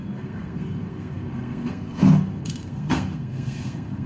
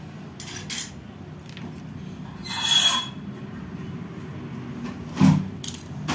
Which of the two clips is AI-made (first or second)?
first